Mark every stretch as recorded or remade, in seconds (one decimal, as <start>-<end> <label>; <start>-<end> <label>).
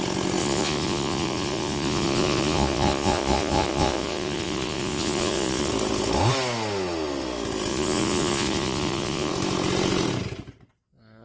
0.0-0.4 recorded; 0.4-5.7 remade; 5.7-7.7 recorded; 7.7-9.3 remade; 9.3-11.2 recorded